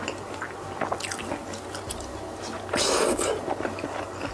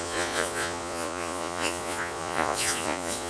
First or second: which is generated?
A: second